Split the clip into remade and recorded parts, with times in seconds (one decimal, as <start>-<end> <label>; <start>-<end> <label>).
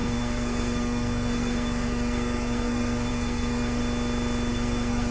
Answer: 0.0-3.8 remade; 3.8-4.5 recorded; 4.5-5.1 remade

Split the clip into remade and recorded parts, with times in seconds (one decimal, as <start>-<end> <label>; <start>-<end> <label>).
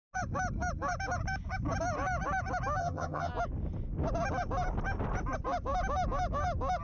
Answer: 0.0-2.8 recorded; 2.8-3.3 remade; 3.3-6.8 recorded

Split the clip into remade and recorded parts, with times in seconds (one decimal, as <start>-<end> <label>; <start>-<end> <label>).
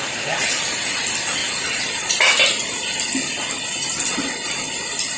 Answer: 0.0-5.2 recorded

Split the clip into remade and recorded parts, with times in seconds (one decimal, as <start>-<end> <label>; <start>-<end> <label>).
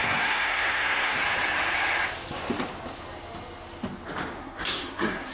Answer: 0.0-1.2 remade; 1.2-4.4 recorded; 4.4-5.3 remade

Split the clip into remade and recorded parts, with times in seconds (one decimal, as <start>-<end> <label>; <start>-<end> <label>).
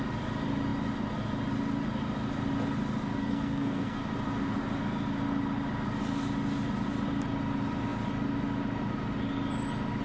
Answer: 0.0-3.2 recorded; 3.2-4.0 remade; 4.0-10.0 recorded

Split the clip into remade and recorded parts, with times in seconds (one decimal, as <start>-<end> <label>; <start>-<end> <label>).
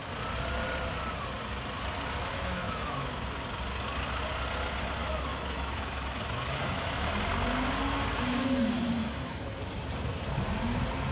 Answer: 0.0-2.2 recorded; 2.2-3.1 remade; 3.1-5.0 recorded; 5.0-7.1 remade; 7.1-9.0 recorded; 9.0-9.6 remade; 9.6-11.1 recorded